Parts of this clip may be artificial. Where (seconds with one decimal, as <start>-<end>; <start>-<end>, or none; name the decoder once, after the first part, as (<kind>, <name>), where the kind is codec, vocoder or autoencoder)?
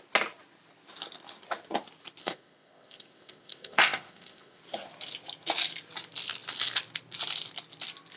2.2-4.6 (codec, ZipCodec)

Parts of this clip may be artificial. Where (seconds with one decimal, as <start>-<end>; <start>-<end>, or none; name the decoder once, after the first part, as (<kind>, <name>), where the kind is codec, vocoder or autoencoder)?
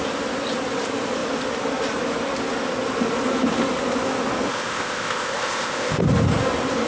4.5-6.0 (codec, ZipCodec)